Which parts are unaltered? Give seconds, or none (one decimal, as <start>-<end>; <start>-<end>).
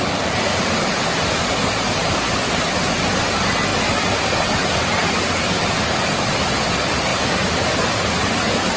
0.0-8.8